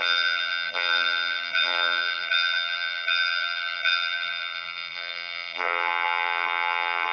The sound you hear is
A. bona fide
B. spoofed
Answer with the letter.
B